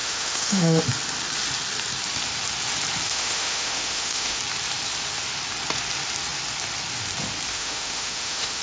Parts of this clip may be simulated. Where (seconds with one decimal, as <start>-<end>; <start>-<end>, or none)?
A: 0.0-0.8; 3.1-4.4; 7.5-8.6